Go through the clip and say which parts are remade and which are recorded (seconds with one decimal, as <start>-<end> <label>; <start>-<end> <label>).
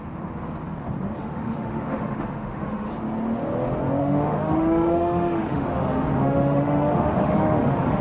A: 0.0-1.2 recorded; 1.2-2.9 remade; 2.9-4.0 recorded; 4.0-8.0 remade